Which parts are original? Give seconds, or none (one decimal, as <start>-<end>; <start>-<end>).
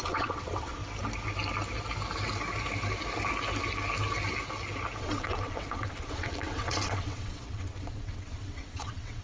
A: 0.8-5.0